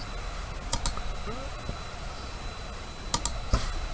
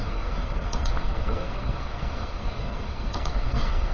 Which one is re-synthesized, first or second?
second